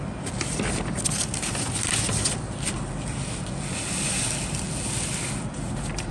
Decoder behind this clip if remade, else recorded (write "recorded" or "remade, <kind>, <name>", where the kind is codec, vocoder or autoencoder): recorded